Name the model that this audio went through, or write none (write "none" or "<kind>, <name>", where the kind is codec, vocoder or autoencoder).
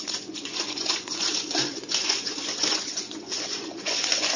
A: vocoder, Vocos